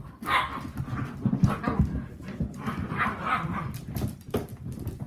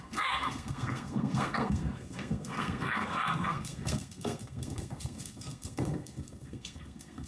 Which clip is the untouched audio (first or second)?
first